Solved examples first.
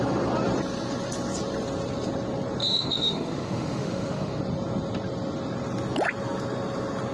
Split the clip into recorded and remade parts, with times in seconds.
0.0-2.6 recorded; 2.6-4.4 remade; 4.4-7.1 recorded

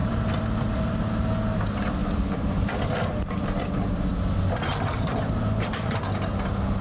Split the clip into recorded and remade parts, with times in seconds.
0.0-1.0 remade; 1.0-2.0 recorded; 2.0-2.6 remade; 2.6-6.8 recorded